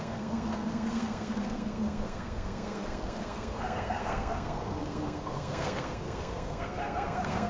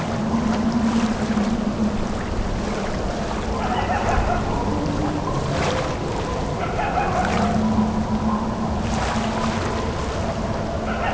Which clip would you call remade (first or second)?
first